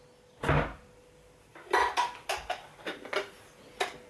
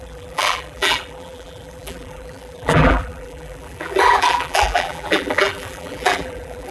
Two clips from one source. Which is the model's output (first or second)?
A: second